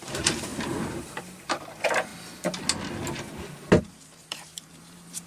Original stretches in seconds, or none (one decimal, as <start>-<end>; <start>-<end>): 2.1-3.8